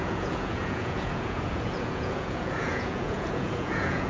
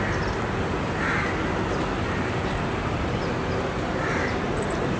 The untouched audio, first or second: second